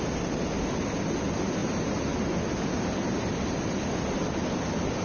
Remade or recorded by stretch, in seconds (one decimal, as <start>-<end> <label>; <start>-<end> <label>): 0.0-5.0 recorded